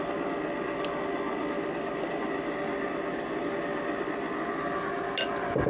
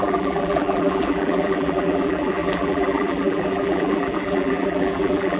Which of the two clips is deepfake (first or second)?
second